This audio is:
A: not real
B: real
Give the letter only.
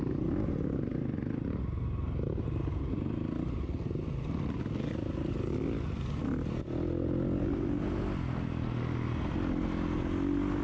B